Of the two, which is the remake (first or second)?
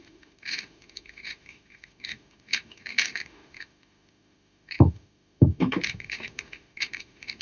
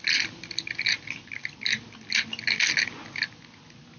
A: first